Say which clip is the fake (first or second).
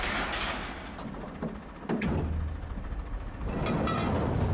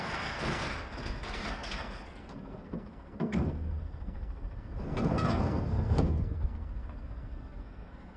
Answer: second